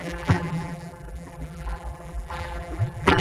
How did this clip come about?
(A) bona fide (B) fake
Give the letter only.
B